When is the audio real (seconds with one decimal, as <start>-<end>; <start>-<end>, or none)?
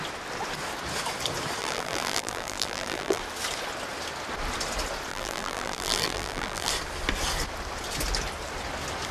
0.0-1.6; 3.2-5.1; 6.7-9.1